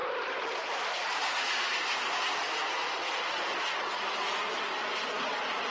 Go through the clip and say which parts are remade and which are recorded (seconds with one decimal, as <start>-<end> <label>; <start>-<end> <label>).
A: 0.0-5.7 recorded